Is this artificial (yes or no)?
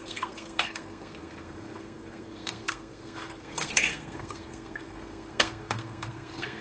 yes